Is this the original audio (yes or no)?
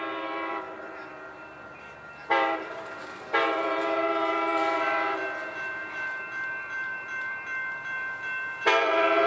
no